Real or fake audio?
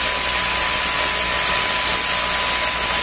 real